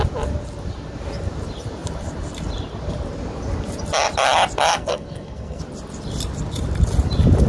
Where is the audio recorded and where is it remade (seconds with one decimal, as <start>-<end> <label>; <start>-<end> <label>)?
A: 0.0-4.7 recorded; 4.7-5.6 remade; 5.6-7.5 recorded